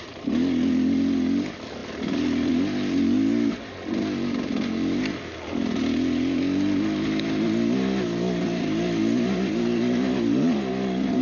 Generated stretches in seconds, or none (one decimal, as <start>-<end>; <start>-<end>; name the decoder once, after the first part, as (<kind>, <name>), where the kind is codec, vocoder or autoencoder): 1.8-2.5 (vocoder, BigVGAN v2)